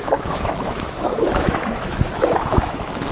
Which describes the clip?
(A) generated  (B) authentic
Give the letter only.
A